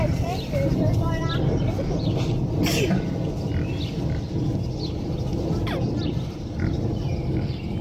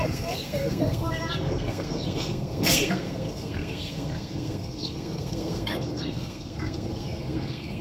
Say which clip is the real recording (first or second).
first